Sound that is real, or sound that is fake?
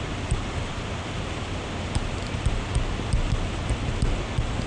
real